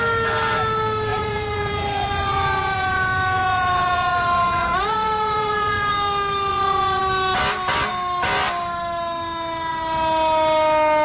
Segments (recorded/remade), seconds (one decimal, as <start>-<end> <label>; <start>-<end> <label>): 0.0-1.1 recorded; 1.1-5.9 remade; 5.9-6.5 recorded; 6.5-7.0 remade; 7.0-11.0 recorded